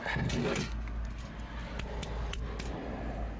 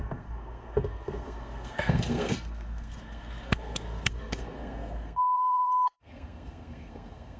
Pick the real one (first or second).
first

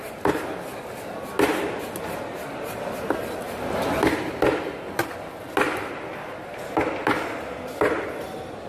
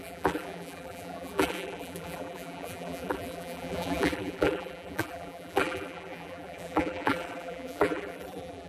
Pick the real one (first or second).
first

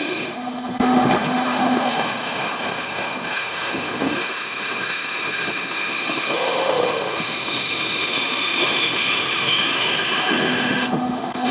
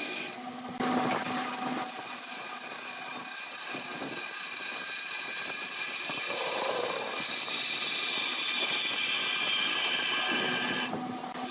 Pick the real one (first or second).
second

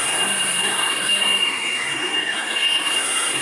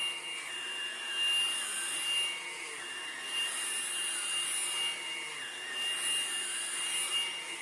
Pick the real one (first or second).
second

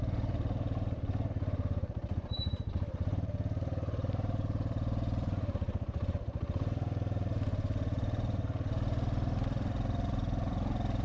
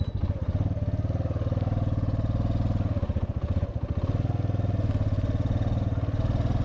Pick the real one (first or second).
second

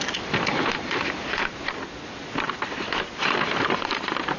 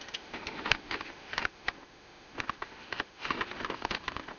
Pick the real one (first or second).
first